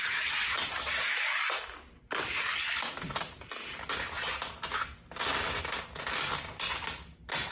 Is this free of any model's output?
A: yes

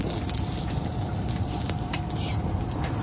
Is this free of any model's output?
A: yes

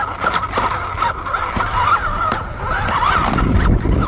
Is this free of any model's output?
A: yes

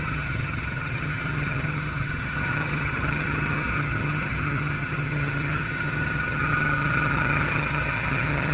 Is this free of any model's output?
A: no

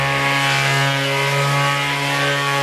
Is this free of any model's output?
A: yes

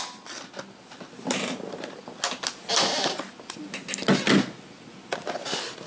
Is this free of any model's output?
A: yes